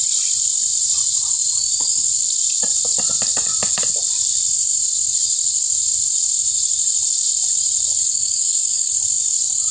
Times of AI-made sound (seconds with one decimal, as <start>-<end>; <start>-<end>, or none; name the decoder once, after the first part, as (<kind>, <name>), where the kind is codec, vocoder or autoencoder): 8.0-8.9 (codec, DAC)